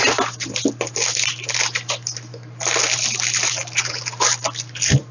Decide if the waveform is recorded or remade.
recorded